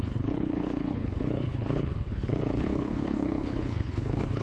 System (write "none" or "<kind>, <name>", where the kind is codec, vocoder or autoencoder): codec, HILCodec